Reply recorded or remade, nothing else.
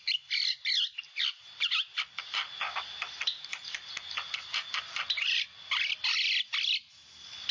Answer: recorded